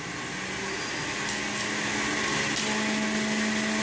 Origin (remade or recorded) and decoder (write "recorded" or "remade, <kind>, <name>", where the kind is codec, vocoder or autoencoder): recorded